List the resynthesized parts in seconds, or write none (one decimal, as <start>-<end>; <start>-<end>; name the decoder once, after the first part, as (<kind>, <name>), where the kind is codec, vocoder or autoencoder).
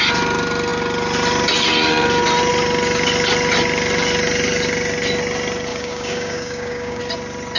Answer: 5.7-7.0 (codec, DAC)